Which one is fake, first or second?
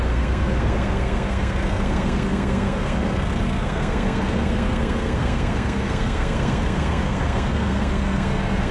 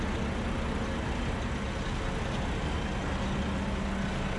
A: first